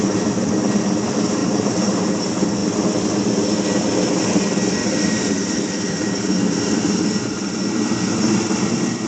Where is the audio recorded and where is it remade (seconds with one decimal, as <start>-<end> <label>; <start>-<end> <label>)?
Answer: 0.0-1.4 recorded; 1.4-2.1 remade; 2.1-4.8 recorded; 4.8-6.1 remade; 6.1-9.1 recorded